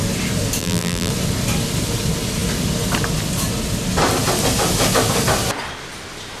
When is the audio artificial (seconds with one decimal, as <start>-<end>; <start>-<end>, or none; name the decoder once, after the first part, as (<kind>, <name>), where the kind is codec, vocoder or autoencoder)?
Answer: 0.6-1.1 (vocoder, BigVGAN v2)